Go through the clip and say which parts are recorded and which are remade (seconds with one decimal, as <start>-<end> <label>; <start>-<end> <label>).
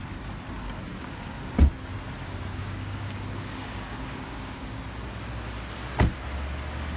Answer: 0.0-0.9 recorded; 0.9-1.5 remade; 1.5-2.5 recorded; 2.5-4.8 remade; 4.8-7.0 recorded